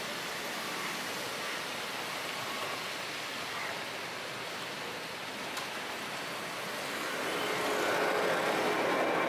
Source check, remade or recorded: recorded